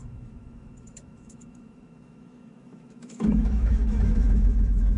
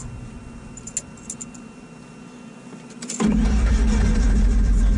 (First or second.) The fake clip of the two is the first